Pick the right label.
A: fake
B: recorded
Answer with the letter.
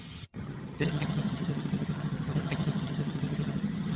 A